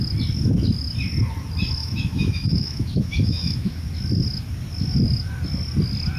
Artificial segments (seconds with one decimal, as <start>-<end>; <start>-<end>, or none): 1.8-3.8